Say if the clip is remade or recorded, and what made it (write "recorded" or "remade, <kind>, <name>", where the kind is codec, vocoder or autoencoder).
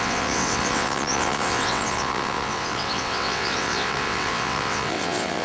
remade, vocoder, WaveNeXt